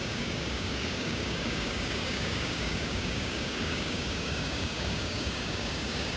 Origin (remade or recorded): remade